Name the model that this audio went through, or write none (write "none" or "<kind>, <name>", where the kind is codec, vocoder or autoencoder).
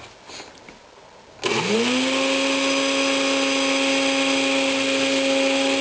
none